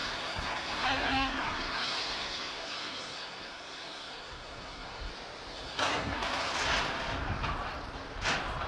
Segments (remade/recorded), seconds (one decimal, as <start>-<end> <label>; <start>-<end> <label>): 0.0-5.1 remade; 5.1-5.5 recorded; 5.5-6.5 remade; 6.5-8.7 recorded